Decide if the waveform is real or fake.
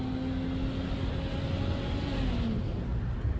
real